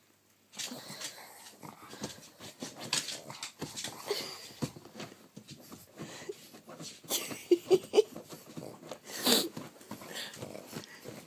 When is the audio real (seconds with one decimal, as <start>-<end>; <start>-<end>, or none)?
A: 0.0-11.3